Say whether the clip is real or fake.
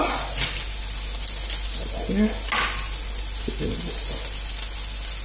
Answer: real